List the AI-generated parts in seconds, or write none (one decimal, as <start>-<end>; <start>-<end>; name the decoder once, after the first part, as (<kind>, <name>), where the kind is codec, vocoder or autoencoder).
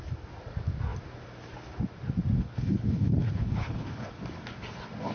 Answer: 2.4-4.1 (codec, HILCodec)